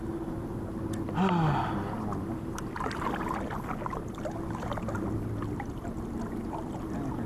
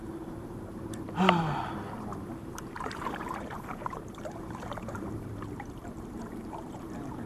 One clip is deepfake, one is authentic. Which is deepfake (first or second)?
second